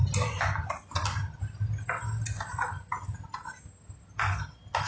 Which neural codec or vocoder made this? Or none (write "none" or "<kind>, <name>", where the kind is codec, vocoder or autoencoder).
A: none